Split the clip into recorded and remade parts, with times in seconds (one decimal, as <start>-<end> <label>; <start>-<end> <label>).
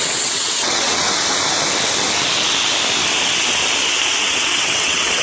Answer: 0.0-1.1 remade; 1.1-4.2 recorded; 4.2-5.2 remade